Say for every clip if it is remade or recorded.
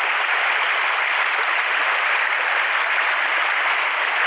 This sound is recorded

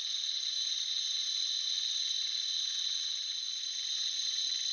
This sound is recorded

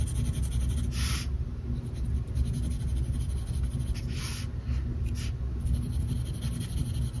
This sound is recorded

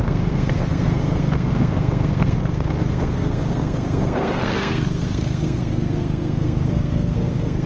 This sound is remade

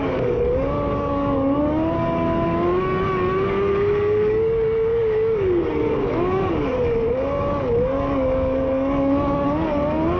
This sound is remade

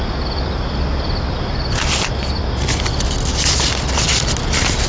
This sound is recorded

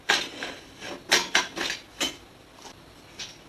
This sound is recorded